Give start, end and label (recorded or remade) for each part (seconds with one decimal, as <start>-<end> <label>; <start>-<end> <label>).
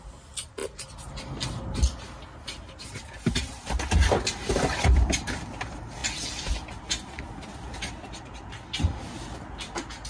0.0-10.1 recorded